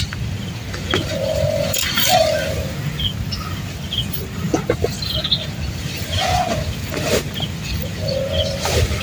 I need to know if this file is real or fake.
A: real